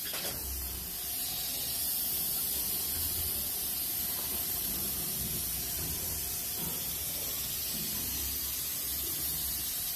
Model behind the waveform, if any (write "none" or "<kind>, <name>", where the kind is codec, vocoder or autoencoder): none